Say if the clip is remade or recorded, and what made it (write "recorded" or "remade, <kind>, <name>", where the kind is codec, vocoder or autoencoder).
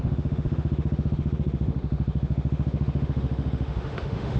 remade, autoencoder, DAC-VAE